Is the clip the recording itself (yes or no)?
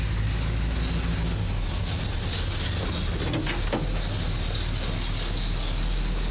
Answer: yes